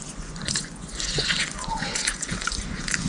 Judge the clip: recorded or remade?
remade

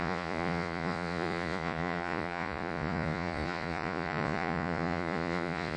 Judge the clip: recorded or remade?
remade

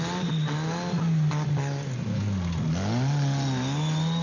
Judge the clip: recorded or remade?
recorded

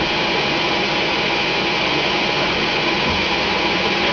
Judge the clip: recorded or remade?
remade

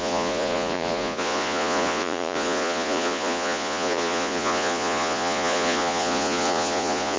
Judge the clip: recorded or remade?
remade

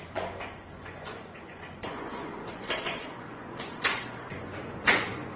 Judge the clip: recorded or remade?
remade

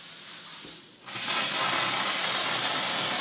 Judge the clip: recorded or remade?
recorded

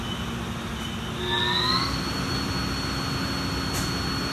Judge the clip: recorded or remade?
recorded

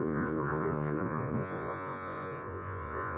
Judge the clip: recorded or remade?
remade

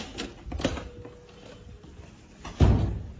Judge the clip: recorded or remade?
recorded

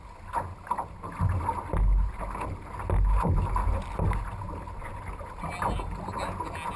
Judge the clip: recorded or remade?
recorded